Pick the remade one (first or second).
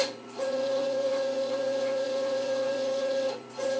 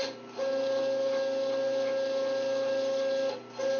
first